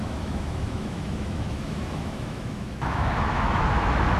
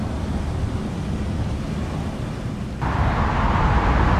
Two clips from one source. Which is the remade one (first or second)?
first